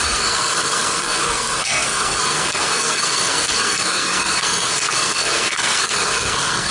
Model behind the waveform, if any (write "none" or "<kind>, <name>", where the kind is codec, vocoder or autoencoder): codec, SNAC